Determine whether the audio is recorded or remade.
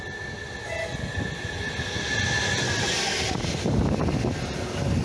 recorded